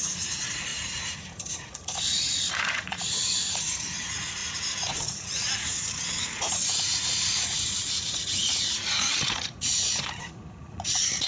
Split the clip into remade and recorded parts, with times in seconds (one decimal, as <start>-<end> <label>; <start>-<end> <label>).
0.0-11.3 remade